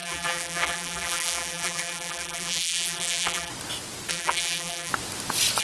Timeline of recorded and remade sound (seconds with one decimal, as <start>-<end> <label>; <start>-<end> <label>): 0.0-3.5 remade; 3.5-4.1 recorded; 4.1-4.9 remade; 4.9-5.6 recorded